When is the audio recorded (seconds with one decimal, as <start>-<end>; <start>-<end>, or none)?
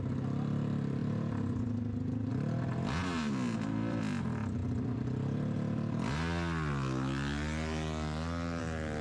0.0-9.0